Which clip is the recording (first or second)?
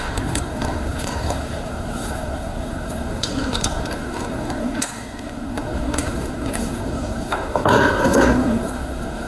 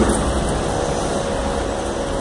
second